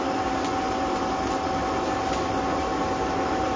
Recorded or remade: recorded